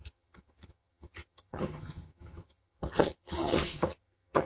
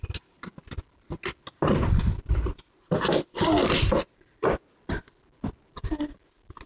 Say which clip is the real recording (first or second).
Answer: second